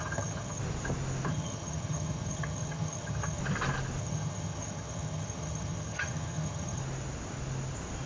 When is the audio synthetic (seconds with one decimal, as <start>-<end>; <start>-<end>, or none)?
0.0-0.6; 1.3-3.4; 4.0-6.8